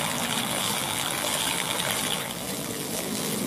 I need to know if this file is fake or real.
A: fake